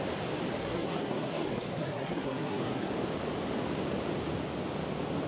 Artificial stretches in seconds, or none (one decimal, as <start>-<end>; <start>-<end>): 0.6-2.9